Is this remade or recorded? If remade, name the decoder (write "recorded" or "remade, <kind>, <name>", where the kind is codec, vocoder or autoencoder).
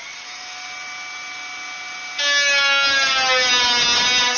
recorded